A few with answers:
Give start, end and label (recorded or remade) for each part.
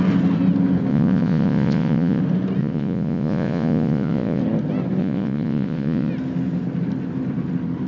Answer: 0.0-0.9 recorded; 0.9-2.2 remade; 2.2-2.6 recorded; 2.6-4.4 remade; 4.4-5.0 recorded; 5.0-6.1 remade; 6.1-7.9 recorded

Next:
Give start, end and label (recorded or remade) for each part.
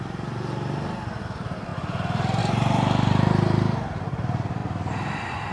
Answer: 0.0-5.5 recorded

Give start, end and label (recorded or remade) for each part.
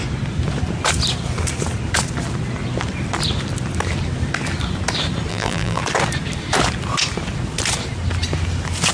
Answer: 0.0-5.3 recorded; 5.3-5.8 remade; 5.8-8.9 recorded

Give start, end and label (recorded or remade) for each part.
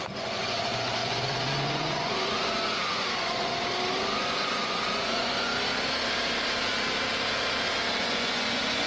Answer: 0.0-3.5 remade; 3.5-4.2 recorded; 4.2-5.5 remade; 5.5-8.0 recorded; 8.0-8.9 remade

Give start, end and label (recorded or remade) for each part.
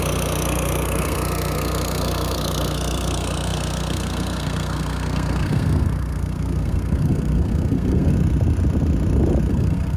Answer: 0.0-8.1 remade; 8.1-9.5 recorded; 9.5-10.0 remade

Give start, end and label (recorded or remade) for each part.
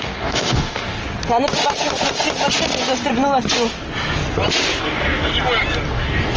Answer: 0.0-1.0 remade; 1.0-4.8 recorded; 4.8-5.3 remade; 5.3-5.9 recorded; 5.9-6.4 remade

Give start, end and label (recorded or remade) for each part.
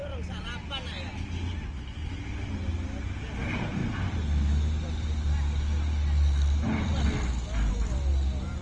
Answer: 0.0-8.6 recorded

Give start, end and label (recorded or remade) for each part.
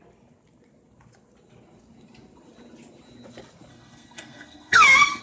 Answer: 0.0-3.7 recorded; 3.7-5.2 remade